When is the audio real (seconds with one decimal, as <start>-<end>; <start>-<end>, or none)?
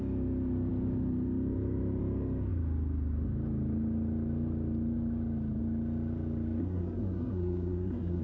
0.0-6.6